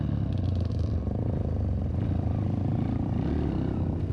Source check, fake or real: real